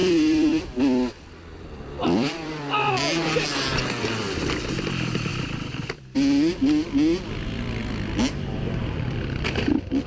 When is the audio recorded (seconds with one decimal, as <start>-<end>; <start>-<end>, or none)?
2.9-5.3; 5.9-10.1